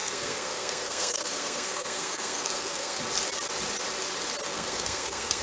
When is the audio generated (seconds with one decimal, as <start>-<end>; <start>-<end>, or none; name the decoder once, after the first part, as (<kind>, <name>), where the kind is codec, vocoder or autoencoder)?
0.0-3.0 (codec, SNAC); 4.5-5.4